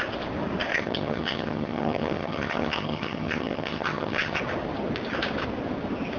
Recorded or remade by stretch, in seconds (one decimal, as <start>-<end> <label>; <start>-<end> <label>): 0.0-0.7 recorded; 0.7-4.4 remade; 4.4-6.2 recorded